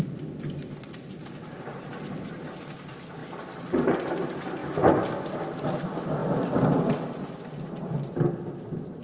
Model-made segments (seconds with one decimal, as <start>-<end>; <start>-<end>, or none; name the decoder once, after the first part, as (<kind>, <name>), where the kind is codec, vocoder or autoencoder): none